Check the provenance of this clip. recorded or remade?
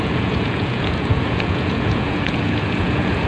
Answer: remade